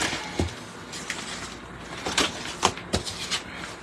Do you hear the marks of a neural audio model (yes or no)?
no